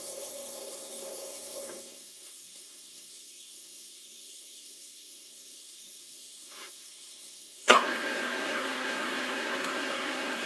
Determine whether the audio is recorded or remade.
remade